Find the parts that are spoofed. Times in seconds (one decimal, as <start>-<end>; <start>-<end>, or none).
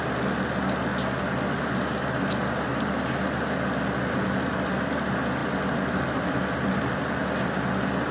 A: none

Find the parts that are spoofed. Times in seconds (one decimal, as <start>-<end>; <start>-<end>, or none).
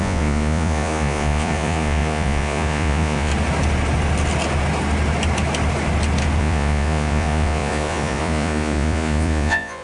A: 0.0-3.3; 6.4-9.8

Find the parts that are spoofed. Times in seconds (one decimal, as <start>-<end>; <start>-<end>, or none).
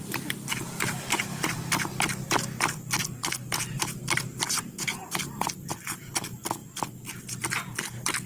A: 3.2-5.5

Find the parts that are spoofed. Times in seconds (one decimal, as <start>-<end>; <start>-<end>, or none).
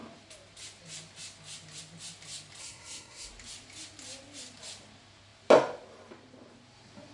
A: 2.6-3.3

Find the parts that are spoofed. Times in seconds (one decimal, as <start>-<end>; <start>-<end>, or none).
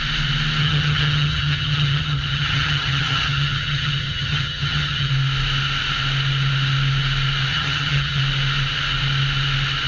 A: 0.6-5.1; 7.5-8.2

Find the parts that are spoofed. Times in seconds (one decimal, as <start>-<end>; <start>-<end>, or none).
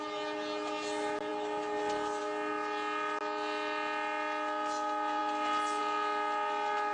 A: none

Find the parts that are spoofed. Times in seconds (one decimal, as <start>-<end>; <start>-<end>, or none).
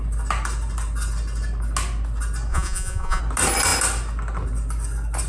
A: 2.5-3.2